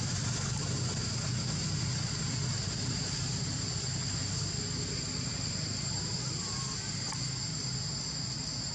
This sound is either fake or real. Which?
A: real